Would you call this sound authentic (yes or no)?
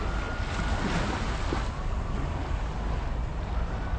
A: yes